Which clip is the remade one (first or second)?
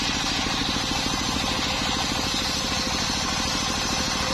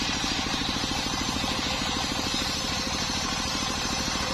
second